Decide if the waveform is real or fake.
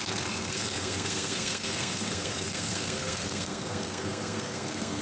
fake